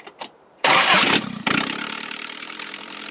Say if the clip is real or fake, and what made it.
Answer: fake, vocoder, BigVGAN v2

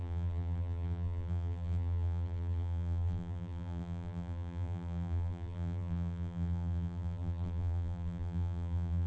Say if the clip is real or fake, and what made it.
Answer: fake, vocoder, BigVGAN v2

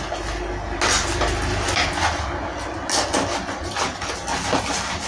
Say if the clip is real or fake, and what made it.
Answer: real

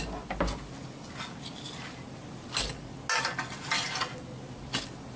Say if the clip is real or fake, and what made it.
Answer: real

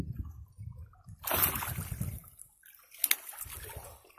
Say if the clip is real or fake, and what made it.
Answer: real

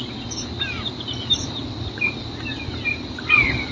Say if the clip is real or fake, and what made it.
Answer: fake, vocoder, BigVGAN v2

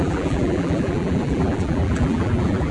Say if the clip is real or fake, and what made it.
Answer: fake, vocoder, BigVGAN v2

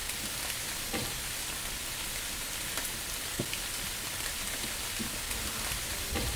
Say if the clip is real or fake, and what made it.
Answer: real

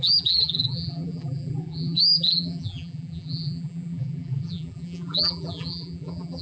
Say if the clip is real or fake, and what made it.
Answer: fake, vocoder, BigVGAN v2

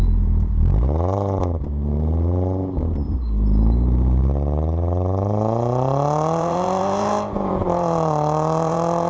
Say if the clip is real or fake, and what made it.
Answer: fake, vocoder, BigVGAN v2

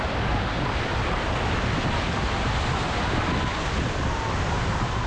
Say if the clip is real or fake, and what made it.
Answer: real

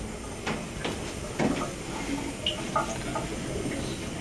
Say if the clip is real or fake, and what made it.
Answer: real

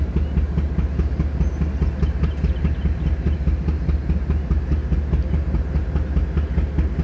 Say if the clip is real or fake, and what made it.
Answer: real